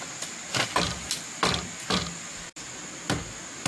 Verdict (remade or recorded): recorded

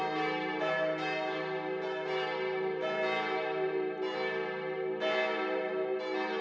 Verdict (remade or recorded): recorded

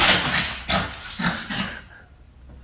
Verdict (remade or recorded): recorded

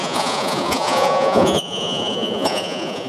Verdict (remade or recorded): remade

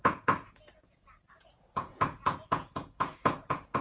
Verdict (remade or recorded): remade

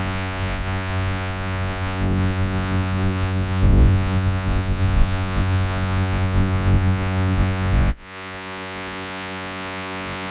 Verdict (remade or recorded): remade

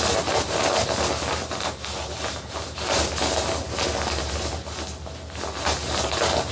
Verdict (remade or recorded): recorded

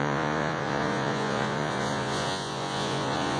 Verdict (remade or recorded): remade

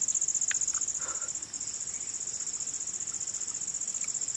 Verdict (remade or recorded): recorded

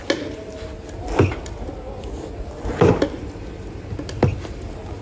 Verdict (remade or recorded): recorded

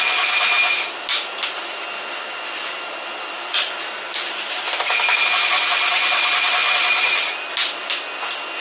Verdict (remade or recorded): recorded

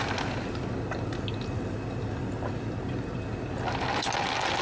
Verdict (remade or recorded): recorded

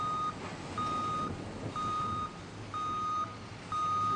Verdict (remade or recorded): recorded